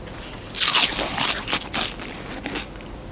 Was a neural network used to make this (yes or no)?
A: no